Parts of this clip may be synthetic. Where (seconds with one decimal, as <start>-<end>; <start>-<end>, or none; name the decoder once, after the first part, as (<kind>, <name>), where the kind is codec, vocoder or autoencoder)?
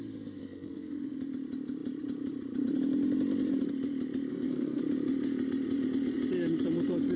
0.4-1.1 (codec, SNAC); 4.3-4.8